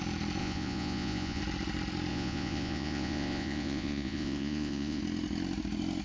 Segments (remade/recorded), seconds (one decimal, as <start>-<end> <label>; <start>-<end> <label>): 0.0-0.4 recorded; 0.4-1.4 remade; 1.4-2.1 recorded; 2.1-5.0 remade; 5.0-6.0 recorded